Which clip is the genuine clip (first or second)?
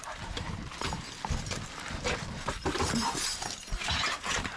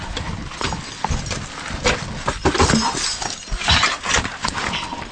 second